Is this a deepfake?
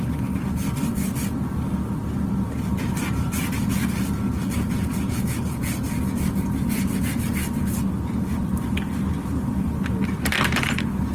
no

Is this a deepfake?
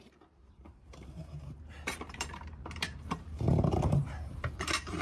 yes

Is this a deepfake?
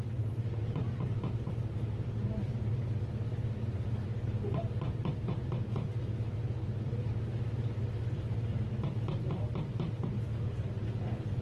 yes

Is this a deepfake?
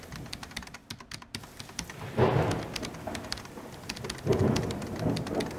no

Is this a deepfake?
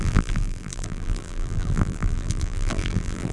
yes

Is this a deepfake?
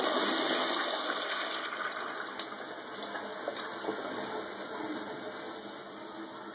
no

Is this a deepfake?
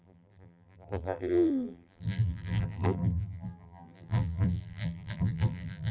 yes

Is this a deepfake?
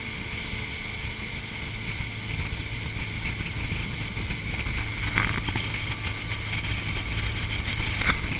no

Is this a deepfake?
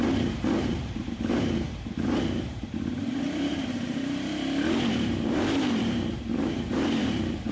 yes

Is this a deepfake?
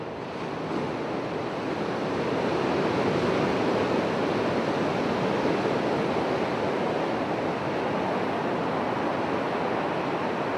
no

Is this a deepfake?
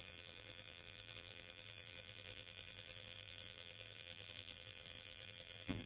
yes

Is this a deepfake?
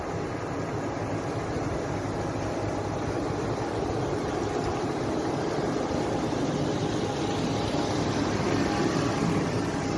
no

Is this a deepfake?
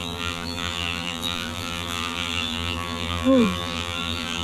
yes